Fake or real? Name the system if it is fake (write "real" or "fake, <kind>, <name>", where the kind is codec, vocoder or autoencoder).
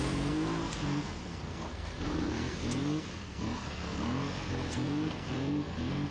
fake, codec, SNAC